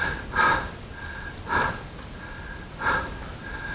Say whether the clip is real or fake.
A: real